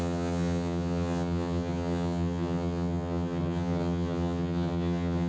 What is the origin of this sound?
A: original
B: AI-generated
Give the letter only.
B